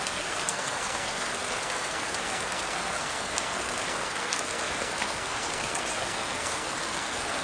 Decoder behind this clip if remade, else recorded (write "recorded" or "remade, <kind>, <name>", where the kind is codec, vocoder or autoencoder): remade, codec, SNAC